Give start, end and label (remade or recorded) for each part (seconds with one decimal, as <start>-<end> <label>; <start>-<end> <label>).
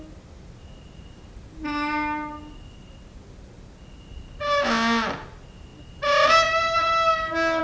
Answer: 0.0-7.6 recorded